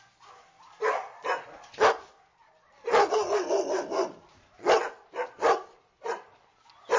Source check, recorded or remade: recorded